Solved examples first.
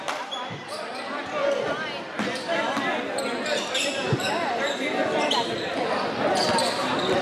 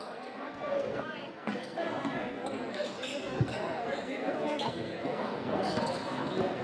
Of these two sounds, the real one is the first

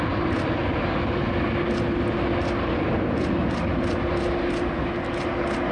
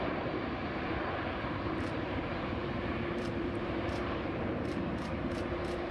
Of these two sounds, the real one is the first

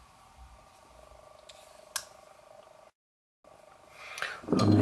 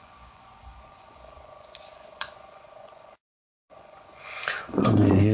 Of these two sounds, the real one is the first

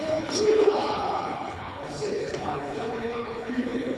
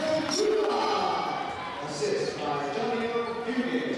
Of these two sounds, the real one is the second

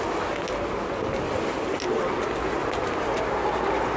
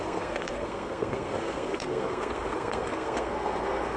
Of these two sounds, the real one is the first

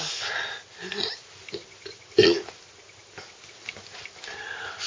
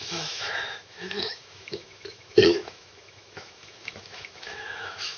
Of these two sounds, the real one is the first